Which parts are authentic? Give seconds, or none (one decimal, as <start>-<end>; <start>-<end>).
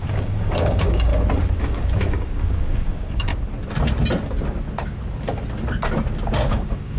1.1-1.6; 3.3-6.5